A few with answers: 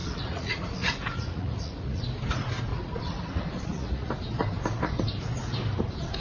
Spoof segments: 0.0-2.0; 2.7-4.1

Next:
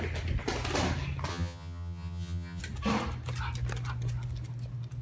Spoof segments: 1.3-2.6

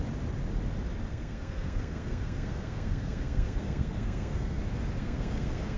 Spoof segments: 1.1-4.6; 5.0-5.8

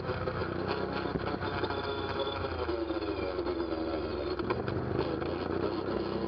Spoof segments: none